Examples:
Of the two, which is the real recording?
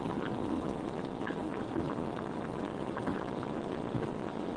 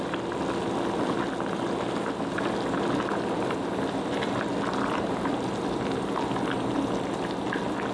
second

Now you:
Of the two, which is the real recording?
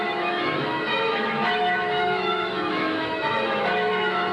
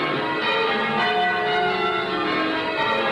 second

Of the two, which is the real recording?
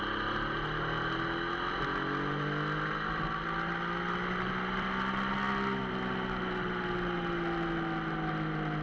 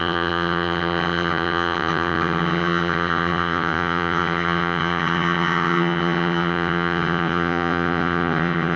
first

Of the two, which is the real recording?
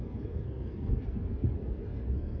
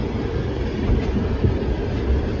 second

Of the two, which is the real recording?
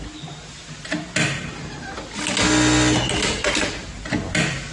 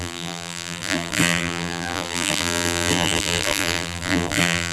first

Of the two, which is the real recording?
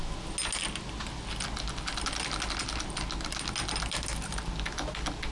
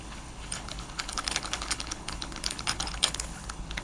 first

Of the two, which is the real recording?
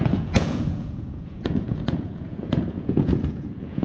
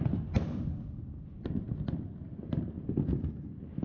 second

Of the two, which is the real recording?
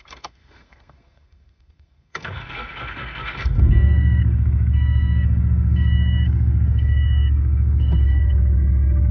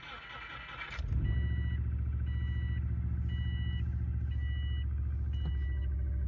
second